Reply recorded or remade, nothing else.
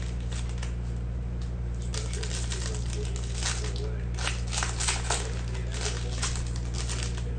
recorded